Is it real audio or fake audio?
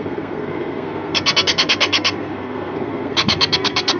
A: fake